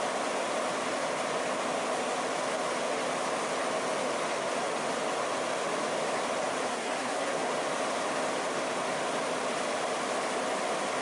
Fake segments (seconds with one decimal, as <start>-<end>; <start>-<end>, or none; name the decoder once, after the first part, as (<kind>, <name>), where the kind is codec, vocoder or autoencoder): 6.7-7.5 (codec, SNAC)